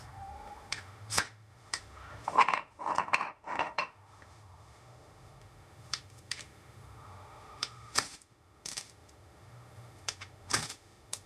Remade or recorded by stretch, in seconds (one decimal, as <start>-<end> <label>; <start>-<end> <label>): 0.0-11.3 remade